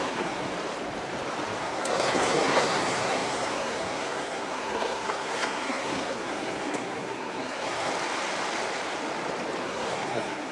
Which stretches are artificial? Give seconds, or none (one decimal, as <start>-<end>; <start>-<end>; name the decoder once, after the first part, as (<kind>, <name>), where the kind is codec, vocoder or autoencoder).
0.0-0.5 (codec, SNAC); 1.6-7.9; 9.6-10.5